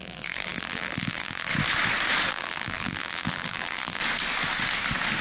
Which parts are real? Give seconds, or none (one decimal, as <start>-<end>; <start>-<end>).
1.5-2.3; 4.0-5.2